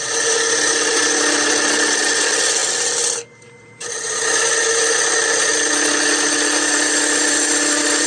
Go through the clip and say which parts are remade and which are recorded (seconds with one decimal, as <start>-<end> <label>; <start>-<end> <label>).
0.0-8.1 recorded